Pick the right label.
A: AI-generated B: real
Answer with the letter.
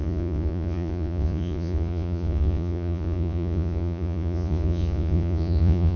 A